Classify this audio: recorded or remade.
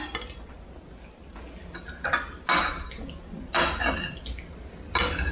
recorded